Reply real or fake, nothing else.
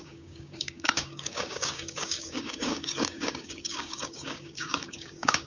fake